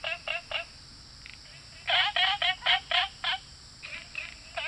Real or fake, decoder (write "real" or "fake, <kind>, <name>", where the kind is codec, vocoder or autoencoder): real